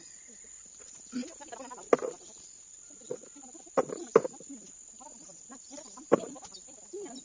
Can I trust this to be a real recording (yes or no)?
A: yes